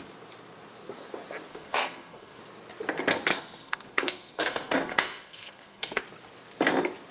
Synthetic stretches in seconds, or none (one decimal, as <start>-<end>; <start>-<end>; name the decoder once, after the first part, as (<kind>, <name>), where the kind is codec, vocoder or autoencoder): 1.5-2.4 (codec, SNAC); 3.3-6.0